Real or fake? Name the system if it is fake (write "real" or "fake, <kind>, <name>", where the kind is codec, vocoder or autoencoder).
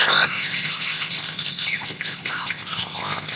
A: fake, codec, ZipCodec